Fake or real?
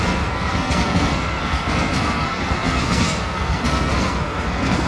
fake